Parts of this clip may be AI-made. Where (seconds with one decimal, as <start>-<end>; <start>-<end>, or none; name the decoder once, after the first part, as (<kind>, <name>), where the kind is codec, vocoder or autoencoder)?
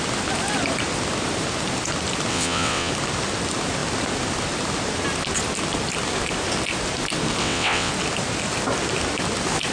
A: 2.3-2.9 (vocoder, WaveNeXt); 7.4-7.9